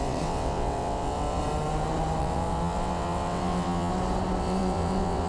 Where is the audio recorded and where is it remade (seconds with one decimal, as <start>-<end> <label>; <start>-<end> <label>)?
0.0-1.4 remade; 1.4-2.2 recorded; 2.2-3.9 remade; 3.9-4.4 recorded; 4.4-5.3 remade